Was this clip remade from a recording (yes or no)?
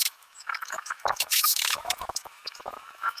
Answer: yes